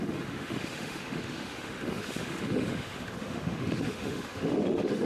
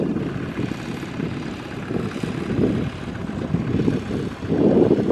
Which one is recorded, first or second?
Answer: second